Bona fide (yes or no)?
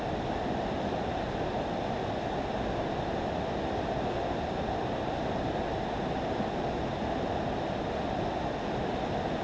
yes